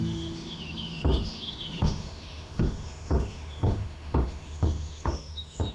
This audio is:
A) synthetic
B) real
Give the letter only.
A